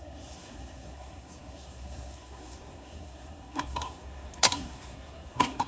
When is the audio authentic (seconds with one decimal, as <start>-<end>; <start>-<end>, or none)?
none